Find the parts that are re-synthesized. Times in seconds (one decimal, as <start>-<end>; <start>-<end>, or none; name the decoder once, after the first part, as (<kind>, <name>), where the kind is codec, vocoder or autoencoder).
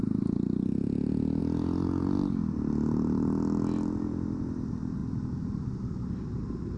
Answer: none